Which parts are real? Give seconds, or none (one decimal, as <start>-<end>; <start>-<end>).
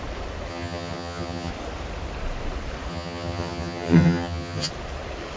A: 0.0-0.5; 1.5-2.9; 4.7-5.4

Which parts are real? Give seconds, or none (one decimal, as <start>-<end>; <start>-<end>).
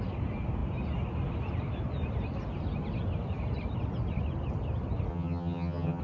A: 0.0-5.1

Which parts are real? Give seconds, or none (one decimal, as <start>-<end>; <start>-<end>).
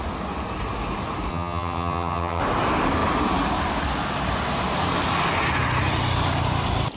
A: 0.0-1.3; 2.4-7.0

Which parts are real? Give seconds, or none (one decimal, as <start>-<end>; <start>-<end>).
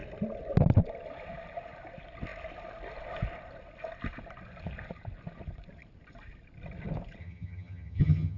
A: 0.0-7.2